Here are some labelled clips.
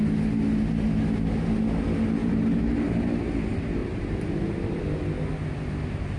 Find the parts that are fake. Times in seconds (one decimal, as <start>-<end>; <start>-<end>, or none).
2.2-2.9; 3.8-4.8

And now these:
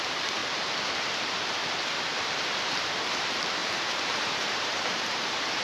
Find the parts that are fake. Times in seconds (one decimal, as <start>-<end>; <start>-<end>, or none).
0.0-0.4; 2.2-5.6

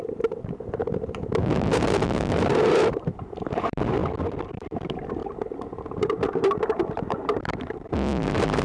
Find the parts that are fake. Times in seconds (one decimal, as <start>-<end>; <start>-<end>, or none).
0.0-4.0; 4.5-8.6

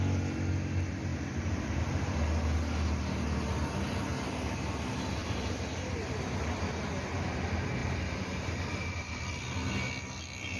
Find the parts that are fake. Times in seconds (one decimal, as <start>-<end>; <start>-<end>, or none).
1.1-1.8; 4.1-4.7; 5.2-5.9; 7.8-9.2

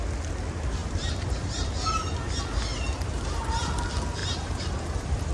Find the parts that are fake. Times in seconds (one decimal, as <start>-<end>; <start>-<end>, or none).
0.8-1.7; 2.7-3.7; 4.2-5.3

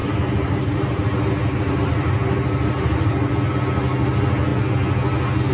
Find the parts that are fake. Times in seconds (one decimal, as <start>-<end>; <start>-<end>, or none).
0.0-3.3

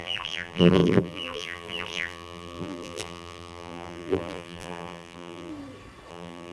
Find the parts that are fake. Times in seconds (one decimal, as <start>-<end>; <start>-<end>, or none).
0.0-5.5; 6.1-6.5